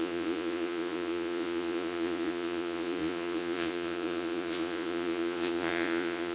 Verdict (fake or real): fake